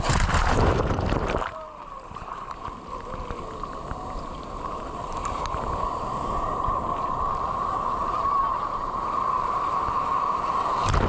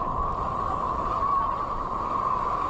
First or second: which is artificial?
first